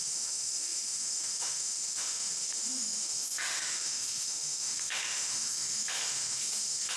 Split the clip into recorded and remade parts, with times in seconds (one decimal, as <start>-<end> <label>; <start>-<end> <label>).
0.0-7.0 remade